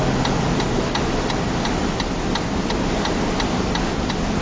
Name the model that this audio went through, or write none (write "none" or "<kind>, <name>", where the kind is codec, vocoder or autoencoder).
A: none